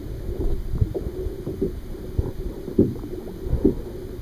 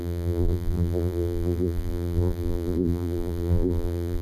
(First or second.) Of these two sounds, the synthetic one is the second